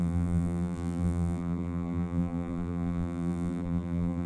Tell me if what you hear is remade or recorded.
remade